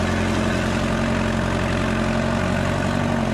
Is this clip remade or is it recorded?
recorded